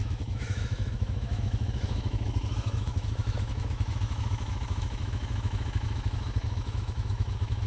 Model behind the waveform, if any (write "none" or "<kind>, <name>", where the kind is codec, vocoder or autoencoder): autoencoder, DAC-VAE